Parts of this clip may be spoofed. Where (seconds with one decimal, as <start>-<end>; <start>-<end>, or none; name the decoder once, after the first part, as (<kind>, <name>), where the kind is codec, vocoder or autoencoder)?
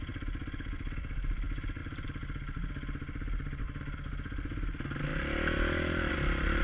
none